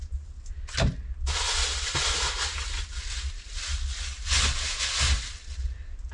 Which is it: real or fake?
real